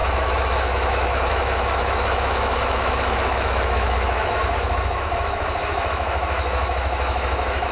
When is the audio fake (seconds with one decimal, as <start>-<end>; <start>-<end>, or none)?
0.0-7.7